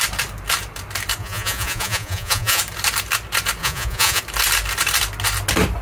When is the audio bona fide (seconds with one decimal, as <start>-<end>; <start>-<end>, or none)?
0.0-1.2; 2.6-3.6; 4.2-5.8